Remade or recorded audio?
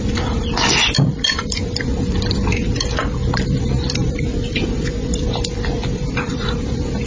remade